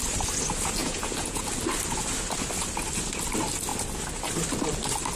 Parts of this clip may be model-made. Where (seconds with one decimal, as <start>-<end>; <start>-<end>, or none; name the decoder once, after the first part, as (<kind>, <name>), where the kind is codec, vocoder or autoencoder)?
0.8-1.5 (vocoder, Vocos)